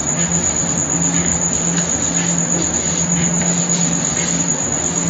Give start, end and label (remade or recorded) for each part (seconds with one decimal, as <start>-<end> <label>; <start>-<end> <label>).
0.0-5.1 recorded